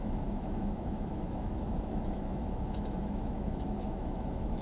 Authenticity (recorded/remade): remade